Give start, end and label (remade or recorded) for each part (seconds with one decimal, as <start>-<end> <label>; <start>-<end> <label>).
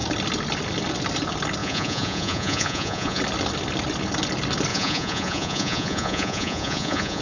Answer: 0.0-1.6 recorded; 1.6-3.2 remade; 3.2-4.7 recorded; 4.7-7.2 remade